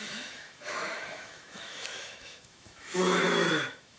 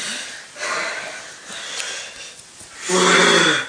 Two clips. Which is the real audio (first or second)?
second